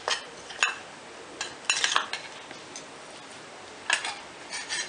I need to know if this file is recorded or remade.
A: recorded